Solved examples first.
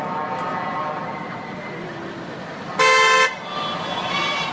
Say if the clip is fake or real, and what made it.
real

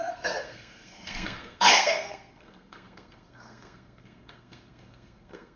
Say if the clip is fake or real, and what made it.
fake, codec, SNAC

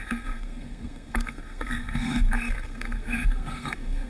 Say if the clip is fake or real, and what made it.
fake, codec, SNAC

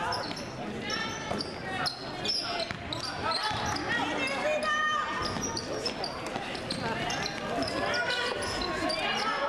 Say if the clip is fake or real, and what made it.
real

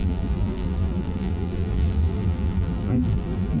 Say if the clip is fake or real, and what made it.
fake, vocoder, BigVGAN v2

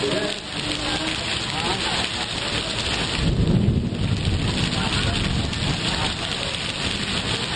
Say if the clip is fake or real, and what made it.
real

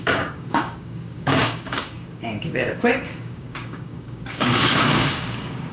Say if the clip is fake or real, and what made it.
fake, codec, DAC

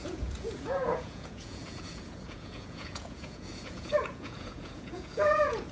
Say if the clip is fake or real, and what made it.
fake, vocoder, Vocos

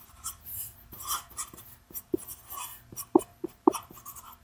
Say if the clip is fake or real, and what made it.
fake, vocoder, BigVGAN v2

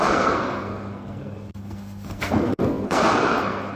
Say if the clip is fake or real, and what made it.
fake, codec, SNAC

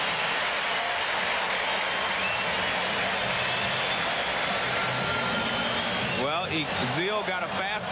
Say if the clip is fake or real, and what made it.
real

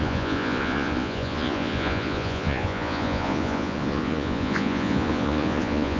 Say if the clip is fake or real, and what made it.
fake, vocoder, Vocos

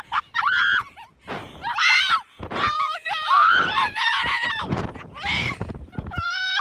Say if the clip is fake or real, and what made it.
fake, vocoder, Vocos